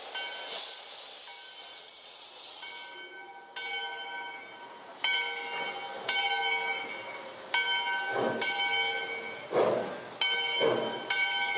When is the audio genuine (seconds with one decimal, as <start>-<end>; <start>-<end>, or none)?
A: 0.0-1.7; 2.7-11.6